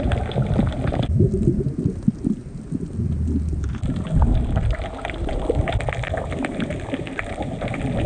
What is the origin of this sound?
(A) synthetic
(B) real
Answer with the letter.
B